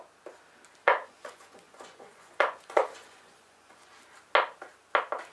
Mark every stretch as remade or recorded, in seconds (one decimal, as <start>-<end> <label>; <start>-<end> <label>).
0.0-0.8 recorded; 0.8-3.9 remade; 3.9-5.3 recorded